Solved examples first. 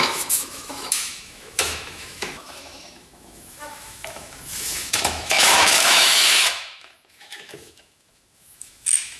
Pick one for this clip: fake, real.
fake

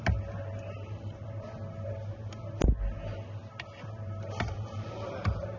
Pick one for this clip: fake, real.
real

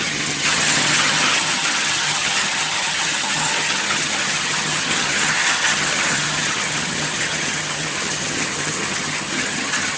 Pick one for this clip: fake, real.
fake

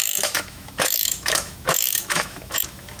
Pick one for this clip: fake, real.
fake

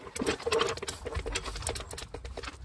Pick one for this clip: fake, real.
real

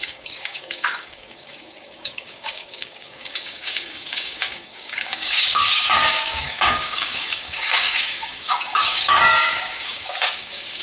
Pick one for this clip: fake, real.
fake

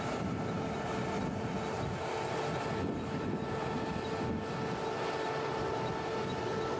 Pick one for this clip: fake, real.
real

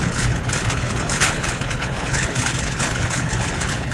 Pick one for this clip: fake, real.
fake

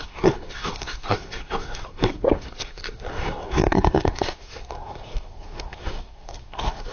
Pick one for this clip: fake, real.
fake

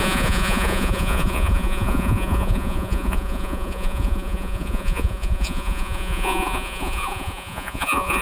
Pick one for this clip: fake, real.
fake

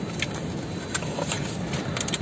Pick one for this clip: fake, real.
real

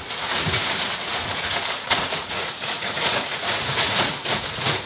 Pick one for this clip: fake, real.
fake